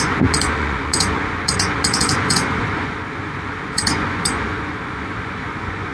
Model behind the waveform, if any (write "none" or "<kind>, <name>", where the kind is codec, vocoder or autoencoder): vocoder, Vocos